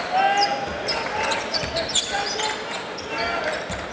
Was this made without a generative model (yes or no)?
yes